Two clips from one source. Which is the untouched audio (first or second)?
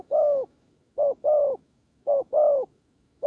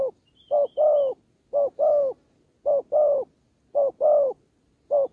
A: second